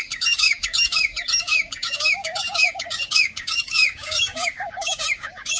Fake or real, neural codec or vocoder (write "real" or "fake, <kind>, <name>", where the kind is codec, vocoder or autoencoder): fake, codec, DAC